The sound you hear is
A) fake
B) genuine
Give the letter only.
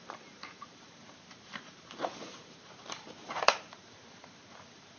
A